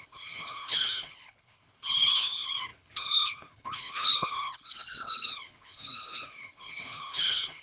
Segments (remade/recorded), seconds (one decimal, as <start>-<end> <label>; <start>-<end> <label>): 0.0-7.6 remade